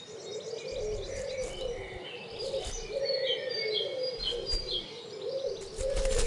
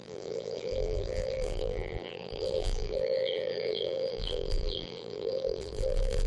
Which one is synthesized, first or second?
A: second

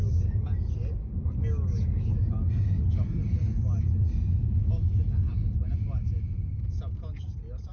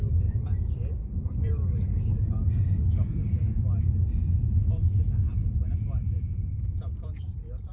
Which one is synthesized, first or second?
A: second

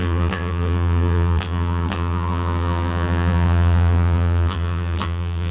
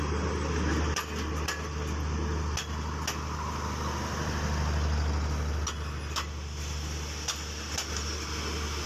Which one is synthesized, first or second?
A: first